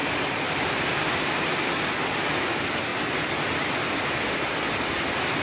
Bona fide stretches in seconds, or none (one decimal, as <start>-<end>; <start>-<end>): 0.8-5.4